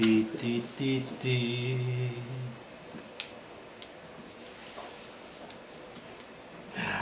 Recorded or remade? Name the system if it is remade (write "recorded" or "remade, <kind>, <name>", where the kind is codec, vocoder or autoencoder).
recorded